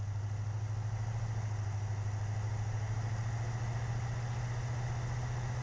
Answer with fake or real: real